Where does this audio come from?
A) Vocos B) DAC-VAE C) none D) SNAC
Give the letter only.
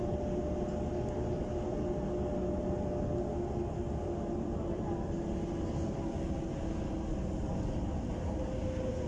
C